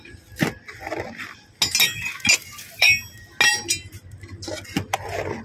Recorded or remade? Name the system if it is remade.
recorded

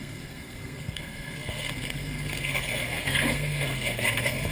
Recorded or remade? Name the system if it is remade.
remade, codec, SNAC